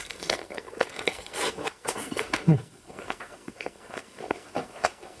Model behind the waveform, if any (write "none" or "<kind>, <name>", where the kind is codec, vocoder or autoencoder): codec, SNAC